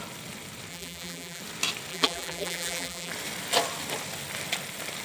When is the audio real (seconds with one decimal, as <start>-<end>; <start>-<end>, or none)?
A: 0.0-0.7; 1.4-1.9; 3.1-5.0